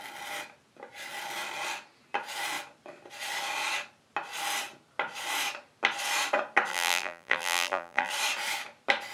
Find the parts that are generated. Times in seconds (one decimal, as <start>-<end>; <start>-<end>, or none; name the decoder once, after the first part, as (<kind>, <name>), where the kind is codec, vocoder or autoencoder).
6.7-8.1 (vocoder, BigVGAN v2)